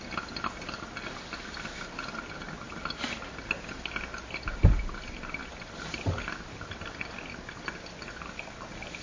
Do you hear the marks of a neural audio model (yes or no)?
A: no